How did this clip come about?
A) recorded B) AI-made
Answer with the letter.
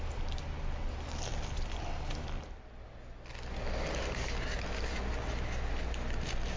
A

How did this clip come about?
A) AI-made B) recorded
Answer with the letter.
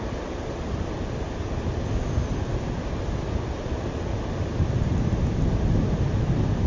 B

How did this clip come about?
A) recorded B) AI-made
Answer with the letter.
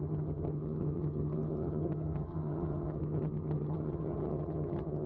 B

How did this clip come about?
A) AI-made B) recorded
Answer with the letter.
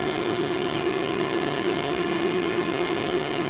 A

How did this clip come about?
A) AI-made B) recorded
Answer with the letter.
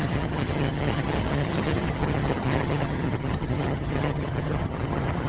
A